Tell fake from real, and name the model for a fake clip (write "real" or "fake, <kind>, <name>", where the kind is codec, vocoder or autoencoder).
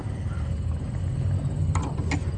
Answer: real